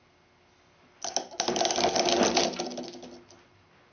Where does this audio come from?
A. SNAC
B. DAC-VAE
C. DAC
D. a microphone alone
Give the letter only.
D